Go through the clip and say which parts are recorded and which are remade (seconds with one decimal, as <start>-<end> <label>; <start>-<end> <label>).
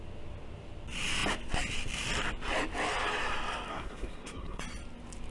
0.0-3.7 recorded; 3.7-4.6 remade; 4.6-5.3 recorded